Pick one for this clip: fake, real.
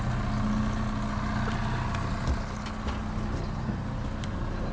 real